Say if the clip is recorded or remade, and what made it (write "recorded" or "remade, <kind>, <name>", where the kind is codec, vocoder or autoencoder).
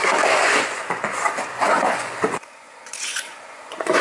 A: remade, vocoder, Vocos